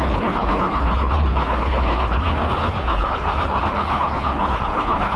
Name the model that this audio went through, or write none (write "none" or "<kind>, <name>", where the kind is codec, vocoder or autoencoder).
codec, HILCodec